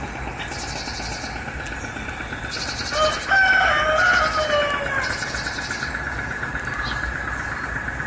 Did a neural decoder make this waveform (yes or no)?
no